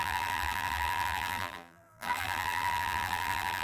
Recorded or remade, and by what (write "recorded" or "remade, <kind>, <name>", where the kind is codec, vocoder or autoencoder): remade, vocoder, BigVGAN v2